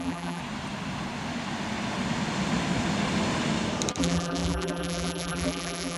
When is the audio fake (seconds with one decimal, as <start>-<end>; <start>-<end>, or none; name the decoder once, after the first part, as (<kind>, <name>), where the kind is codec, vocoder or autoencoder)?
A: 0.0-0.4 (vocoder, BigVGAN v2); 4.0-6.0